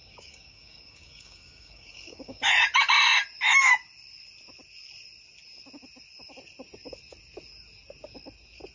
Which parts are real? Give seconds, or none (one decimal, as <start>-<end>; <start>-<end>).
2.5-8.7